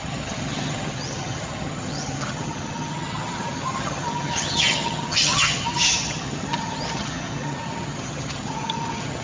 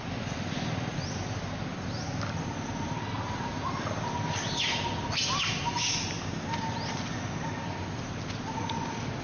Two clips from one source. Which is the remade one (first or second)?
first